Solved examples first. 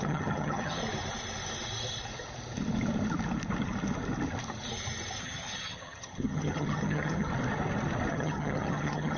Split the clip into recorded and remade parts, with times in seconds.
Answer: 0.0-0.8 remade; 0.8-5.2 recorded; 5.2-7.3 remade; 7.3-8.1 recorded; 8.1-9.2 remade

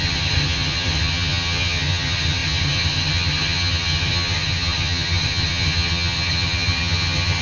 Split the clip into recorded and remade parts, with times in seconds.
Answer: 0.0-7.4 remade

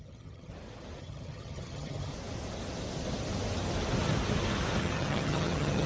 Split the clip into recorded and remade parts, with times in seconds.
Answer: 0.0-0.5 remade; 0.5-1.0 recorded; 1.0-2.1 remade; 2.1-4.8 recorded; 4.8-5.9 remade

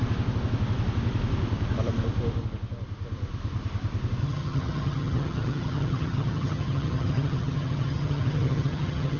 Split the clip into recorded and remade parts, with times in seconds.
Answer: 0.0-4.2 recorded; 4.2-9.2 remade

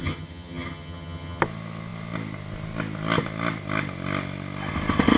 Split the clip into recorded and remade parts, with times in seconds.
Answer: 0.0-1.4 remade; 1.4-5.2 recorded

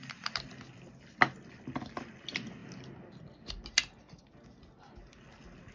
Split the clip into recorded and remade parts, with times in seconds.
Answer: 0.0-5.7 recorded

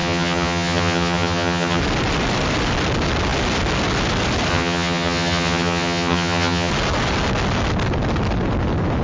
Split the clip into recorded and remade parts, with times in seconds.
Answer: 0.0-1.8 remade; 1.8-4.5 recorded; 4.5-6.7 remade; 6.7-9.0 recorded

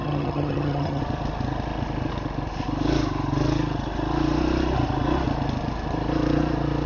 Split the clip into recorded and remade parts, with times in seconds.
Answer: 0.0-1.0 remade; 1.0-6.9 recorded